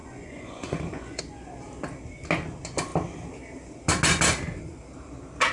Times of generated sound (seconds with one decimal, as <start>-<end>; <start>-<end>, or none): 0.0-1.2